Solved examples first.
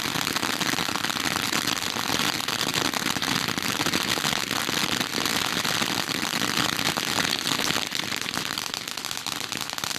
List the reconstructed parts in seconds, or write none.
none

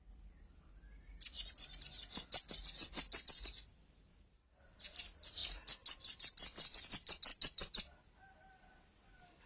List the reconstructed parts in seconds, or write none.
none

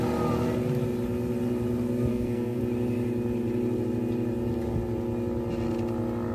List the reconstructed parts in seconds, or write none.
2.1-2.6 (codec, SNAC)

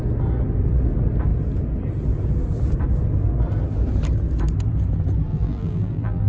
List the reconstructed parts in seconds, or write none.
5.3-6.3 (vocoder, BigVGAN v2)

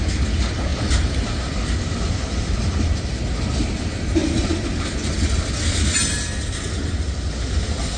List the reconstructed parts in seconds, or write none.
0.7-1.4 (vocoder, BigVGAN v2); 4.2-5.1

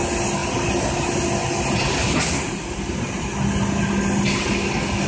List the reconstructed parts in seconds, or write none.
none